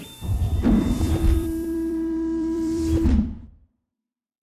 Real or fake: fake